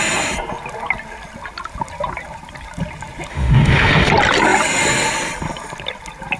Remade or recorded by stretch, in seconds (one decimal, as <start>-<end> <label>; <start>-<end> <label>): 0.0-3.3 recorded; 3.3-4.1 remade; 4.1-6.4 recorded